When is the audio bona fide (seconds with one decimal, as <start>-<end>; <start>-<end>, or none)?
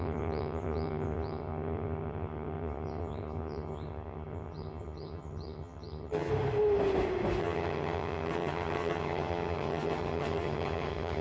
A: 6.3-7.4